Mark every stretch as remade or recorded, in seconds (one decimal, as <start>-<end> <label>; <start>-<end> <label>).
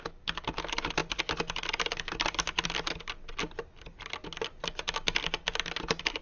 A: 0.0-6.2 recorded